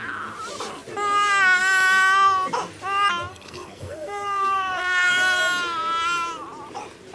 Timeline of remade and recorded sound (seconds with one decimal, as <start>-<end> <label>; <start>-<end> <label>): 0.0-3.3 recorded; 3.3-5.4 remade; 5.4-7.1 recorded